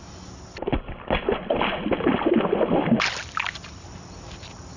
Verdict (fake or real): real